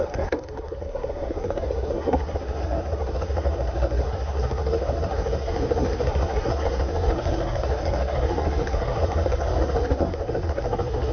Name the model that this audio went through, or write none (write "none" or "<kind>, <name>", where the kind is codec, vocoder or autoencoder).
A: codec, SNAC